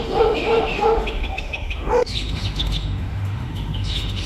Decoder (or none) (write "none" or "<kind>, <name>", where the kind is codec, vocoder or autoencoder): autoencoder, DAC-VAE